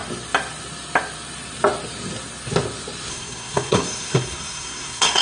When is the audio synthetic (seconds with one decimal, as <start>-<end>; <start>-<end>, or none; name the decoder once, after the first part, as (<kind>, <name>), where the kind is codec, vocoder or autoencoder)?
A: 3.1-5.2 (codec, SNAC)